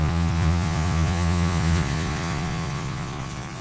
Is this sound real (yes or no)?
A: no